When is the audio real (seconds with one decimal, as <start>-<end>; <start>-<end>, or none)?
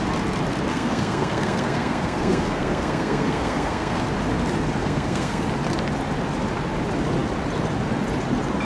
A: 0.0-0.7; 4.0-4.8; 5.4-8.6